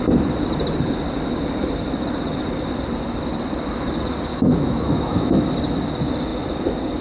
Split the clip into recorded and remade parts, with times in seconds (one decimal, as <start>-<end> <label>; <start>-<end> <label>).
0.0-4.3 recorded; 4.3-5.4 remade; 5.4-7.0 recorded